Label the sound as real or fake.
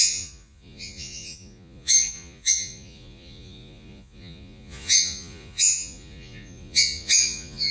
fake